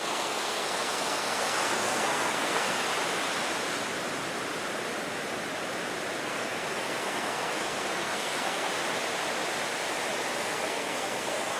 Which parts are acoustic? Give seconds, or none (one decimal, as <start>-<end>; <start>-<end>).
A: 2.9-6.2; 8.7-10.4